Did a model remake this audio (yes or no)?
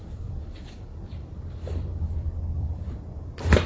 yes